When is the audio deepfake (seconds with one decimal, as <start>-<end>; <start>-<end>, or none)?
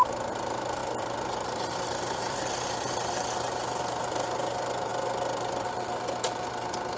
0.8-3.8